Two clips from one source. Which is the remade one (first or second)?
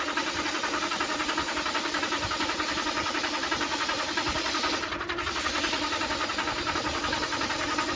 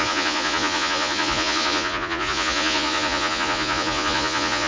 second